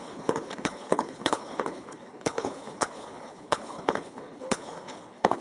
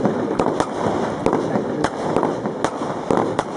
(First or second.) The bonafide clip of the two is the second